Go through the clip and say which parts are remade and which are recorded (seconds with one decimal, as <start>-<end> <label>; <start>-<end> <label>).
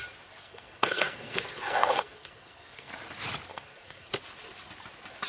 0.0-0.4 recorded; 0.4-2.9 remade; 2.9-3.5 recorded; 3.5-4.1 remade; 4.1-5.3 recorded